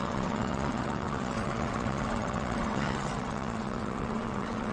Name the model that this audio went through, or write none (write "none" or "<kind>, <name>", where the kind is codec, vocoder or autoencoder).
vocoder, WaveNeXt